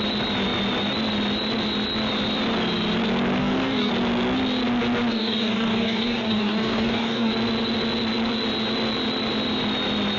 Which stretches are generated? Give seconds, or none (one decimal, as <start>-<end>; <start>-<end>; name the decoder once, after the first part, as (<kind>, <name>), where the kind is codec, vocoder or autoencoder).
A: 3.4-3.9 (codec, DAC); 5.1-7.3